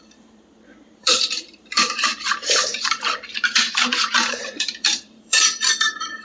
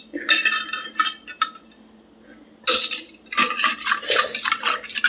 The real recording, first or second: second